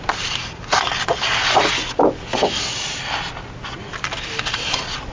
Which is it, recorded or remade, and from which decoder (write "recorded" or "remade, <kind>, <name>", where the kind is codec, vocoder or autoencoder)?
recorded